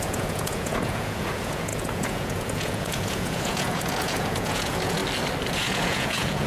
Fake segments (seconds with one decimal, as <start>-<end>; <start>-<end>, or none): 0.0-5.0; 5.5-6.5